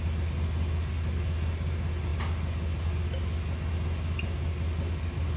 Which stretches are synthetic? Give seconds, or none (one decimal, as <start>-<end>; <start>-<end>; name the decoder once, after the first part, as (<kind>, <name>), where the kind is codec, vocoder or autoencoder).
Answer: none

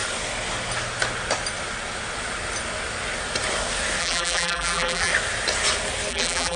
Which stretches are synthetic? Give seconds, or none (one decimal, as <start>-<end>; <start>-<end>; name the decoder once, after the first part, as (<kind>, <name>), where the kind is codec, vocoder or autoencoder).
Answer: 4.0-5.1 (vocoder, BigVGAN v2); 6.1-6.6

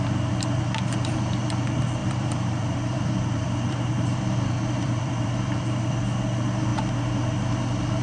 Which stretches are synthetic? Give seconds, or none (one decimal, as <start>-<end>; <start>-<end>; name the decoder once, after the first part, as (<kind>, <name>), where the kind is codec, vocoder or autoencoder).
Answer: 2.0-5.9 (vocoder, BigVGAN v2)